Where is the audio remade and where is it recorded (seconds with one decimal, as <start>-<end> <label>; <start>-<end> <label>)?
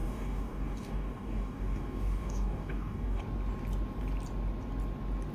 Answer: 0.0-3.2 remade; 3.2-5.3 recorded